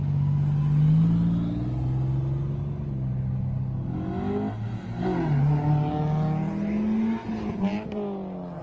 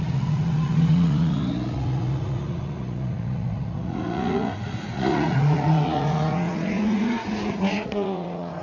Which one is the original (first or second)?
first